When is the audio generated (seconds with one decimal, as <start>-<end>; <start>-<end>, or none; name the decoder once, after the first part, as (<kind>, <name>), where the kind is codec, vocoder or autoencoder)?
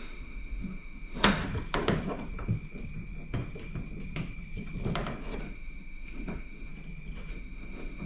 0.0-1.4 (autoencoder, DAC-VAE); 5.4-6.7; 7.3-8.1